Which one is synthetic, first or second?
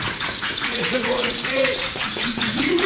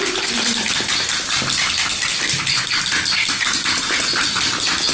first